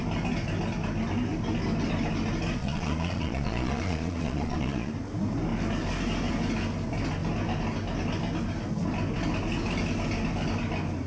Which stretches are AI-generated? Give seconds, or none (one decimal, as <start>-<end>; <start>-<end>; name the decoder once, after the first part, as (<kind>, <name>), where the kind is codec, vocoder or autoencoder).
2.6-4.9 (vocoder, Vocos)